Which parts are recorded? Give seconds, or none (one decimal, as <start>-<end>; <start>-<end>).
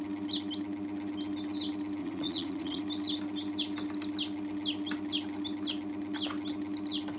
0.0-2.0; 2.8-7.2